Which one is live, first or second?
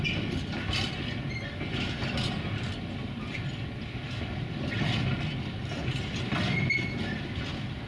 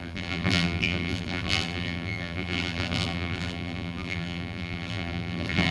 first